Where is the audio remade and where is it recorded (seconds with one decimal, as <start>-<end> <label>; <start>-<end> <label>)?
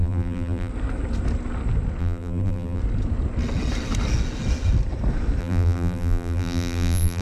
0.0-0.7 remade; 0.7-2.0 recorded; 2.0-2.8 remade; 2.8-5.4 recorded; 5.4-7.2 remade